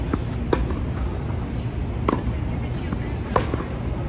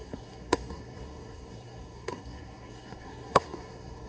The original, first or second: first